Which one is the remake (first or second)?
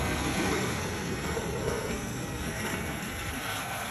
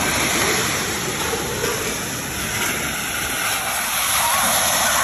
first